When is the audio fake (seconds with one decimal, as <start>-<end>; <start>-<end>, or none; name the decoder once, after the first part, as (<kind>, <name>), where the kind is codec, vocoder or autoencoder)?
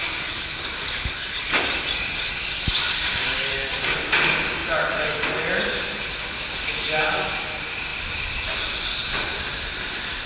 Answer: 0.0-3.8 (vocoder, BigVGAN v2); 4.6-6.2; 7.9-8.5